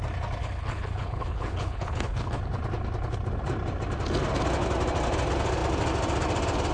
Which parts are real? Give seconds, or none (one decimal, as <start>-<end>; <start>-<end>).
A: 0.0-0.4; 2.4-6.7